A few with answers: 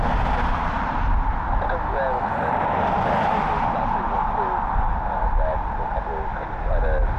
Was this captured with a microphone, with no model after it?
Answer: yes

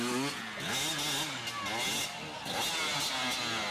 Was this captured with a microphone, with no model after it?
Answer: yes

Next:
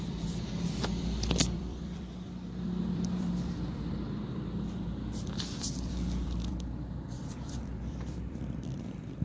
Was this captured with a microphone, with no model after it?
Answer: no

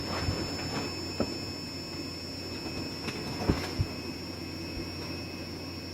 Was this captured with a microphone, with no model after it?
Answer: yes